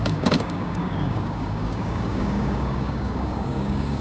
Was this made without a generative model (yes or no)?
no